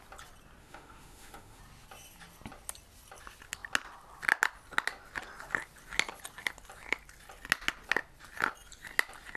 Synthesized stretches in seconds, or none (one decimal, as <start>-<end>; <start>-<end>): 0.6-1.6